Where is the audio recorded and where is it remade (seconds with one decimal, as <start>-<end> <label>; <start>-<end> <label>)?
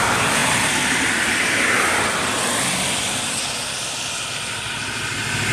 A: 0.0-5.5 recorded